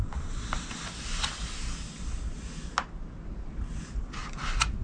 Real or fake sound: real